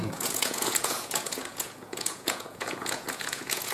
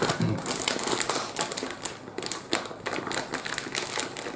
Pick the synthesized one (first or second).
first